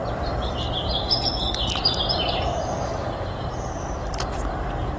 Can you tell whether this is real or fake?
fake